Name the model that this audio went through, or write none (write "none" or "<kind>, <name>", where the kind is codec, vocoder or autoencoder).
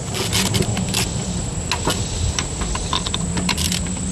none